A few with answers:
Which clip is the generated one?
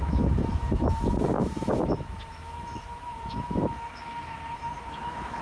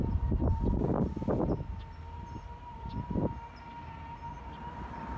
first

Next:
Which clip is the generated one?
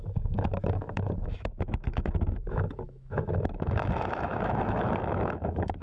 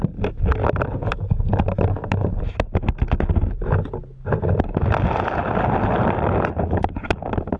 first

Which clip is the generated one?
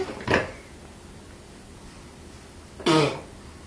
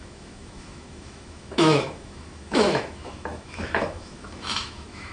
second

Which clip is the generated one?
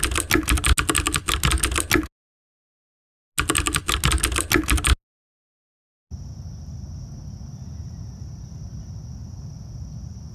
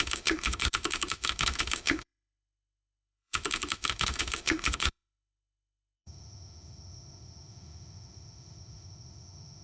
second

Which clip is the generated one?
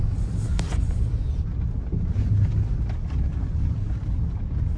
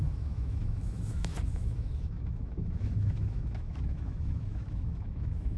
second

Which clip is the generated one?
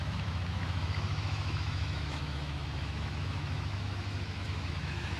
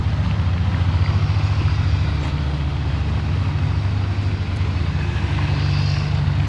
first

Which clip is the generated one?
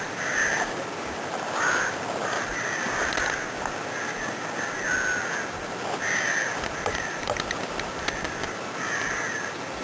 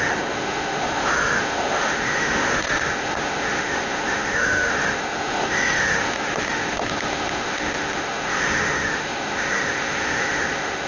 second